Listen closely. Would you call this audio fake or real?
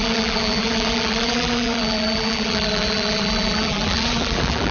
fake